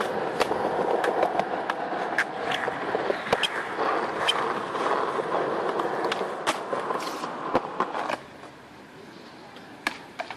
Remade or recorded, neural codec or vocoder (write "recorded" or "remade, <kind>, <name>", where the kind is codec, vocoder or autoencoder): recorded